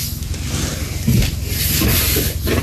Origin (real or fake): real